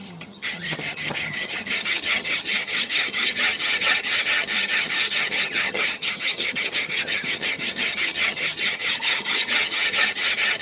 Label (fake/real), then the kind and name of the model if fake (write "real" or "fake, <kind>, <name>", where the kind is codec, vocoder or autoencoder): fake, vocoder, HiFi-GAN